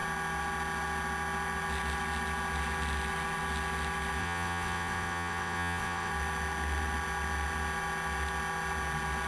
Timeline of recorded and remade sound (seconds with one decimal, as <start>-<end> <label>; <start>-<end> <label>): 0.0-4.2 recorded; 4.2-6.1 remade; 6.1-9.3 recorded